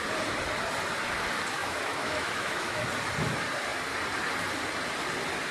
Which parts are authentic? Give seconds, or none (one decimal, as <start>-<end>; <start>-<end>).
0.0-1.6; 2.8-5.5